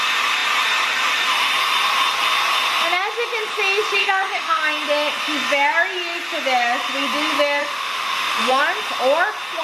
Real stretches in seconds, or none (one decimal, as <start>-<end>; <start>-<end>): 0.0-4.0; 4.6-7.6; 8.6-9.6